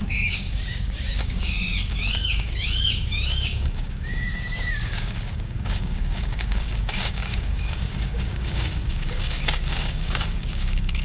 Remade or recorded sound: remade